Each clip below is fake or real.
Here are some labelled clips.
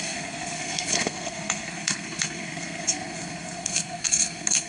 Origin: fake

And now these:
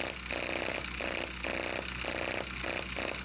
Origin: real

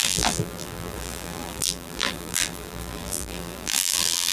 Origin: fake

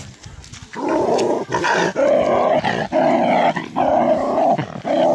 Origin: real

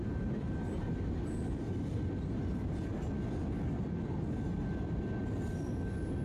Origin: real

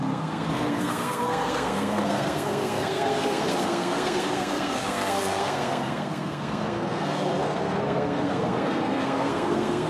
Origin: fake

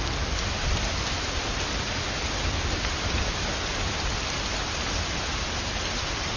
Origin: real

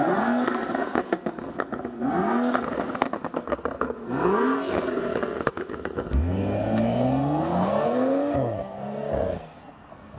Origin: fake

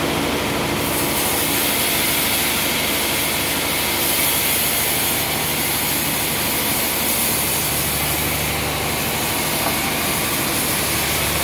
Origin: real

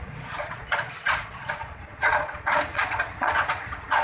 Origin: fake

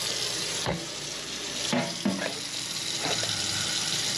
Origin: real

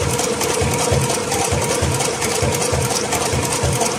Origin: real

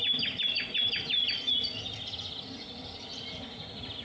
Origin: real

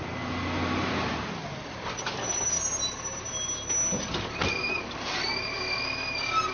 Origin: real